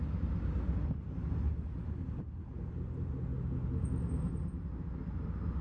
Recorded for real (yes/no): yes